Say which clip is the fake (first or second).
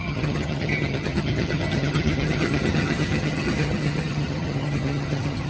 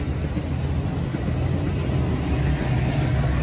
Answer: first